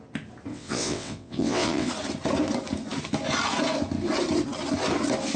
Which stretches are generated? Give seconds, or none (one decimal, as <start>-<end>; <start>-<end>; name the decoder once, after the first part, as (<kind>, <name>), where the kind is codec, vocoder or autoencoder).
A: 0.5-1.9 (vocoder, WaveNeXt)